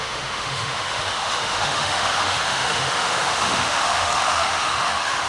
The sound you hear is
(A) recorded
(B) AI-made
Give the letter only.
B